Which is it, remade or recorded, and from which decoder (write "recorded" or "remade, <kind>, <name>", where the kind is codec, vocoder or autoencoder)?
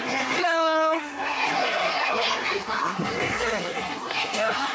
remade, codec, SNAC